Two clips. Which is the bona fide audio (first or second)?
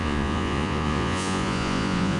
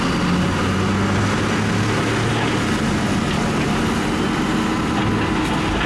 second